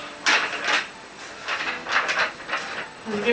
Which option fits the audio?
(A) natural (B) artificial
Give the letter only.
A